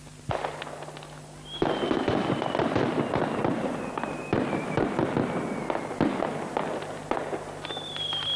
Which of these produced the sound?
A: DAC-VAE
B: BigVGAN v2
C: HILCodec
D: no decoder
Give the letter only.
D